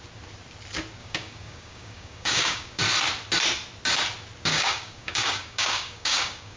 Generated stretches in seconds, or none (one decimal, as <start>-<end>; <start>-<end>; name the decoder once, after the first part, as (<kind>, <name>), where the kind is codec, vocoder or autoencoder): 1.0-2.8 (codec, DAC); 4.5-6.6